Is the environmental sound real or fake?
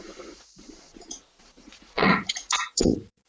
fake